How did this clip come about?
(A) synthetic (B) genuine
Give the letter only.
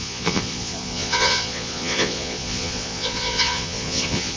A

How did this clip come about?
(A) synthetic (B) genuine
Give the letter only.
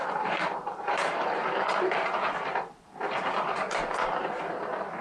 A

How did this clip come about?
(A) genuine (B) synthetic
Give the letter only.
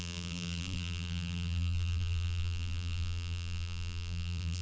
B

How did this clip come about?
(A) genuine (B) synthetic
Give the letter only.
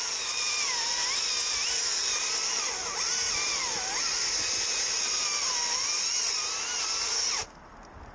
A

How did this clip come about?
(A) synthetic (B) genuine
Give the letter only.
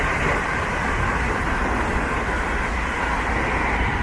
B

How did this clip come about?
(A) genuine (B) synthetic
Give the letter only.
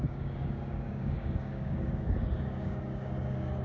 B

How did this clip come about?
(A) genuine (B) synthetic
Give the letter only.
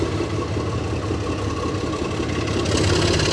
A